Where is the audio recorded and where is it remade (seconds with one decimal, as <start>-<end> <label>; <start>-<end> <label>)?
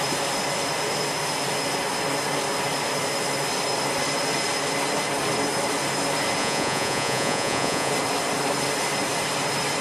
0.0-6.4 recorded; 6.4-7.9 remade; 7.9-9.8 recorded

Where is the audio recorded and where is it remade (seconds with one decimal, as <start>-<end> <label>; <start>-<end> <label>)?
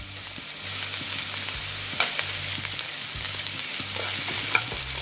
0.0-2.5 recorded; 2.5-3.7 remade; 3.7-5.0 recorded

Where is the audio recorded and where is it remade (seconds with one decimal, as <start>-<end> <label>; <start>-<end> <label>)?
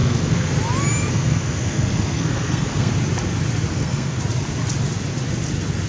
0.0-0.5 remade; 0.5-1.1 recorded; 1.1-2.9 remade; 2.9-3.7 recorded; 3.7-4.2 remade; 4.2-5.9 recorded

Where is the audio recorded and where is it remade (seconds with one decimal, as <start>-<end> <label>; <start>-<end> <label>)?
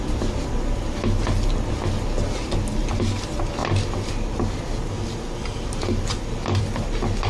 0.0-7.3 recorded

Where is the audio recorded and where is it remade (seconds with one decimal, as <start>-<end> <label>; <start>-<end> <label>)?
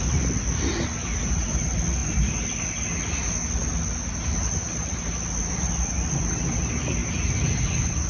0.0-8.1 recorded